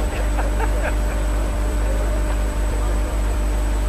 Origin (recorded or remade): remade